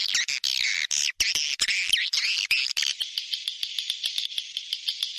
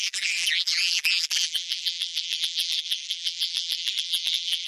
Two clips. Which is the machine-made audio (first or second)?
second